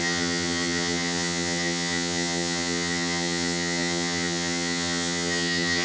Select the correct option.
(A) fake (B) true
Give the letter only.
A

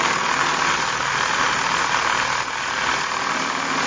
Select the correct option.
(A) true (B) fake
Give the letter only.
A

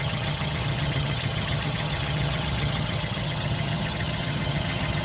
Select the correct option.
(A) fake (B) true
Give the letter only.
A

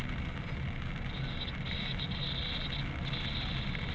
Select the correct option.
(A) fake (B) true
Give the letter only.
B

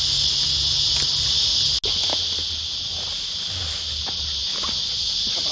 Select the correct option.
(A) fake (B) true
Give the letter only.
B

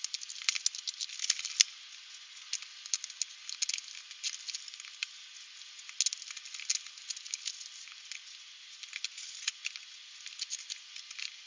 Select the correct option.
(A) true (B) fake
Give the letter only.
A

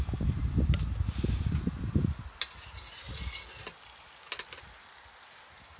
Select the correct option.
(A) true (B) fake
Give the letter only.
A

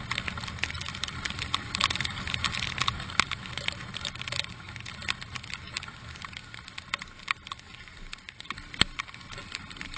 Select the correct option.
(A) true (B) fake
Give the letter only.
A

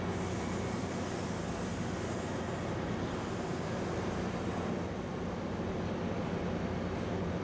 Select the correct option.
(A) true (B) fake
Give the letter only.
A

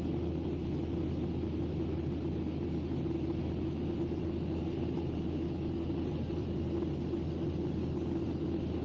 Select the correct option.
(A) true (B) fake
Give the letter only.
A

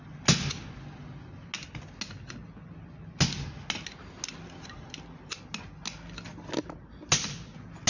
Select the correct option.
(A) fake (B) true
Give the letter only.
B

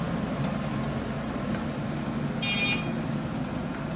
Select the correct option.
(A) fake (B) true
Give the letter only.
B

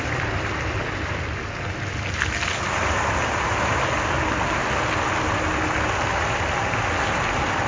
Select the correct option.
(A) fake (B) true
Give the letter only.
B